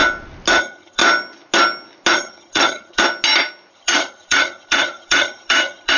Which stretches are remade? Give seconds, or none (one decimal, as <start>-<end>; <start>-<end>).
0.6-1.0; 2.1-3.0; 3.7-6.0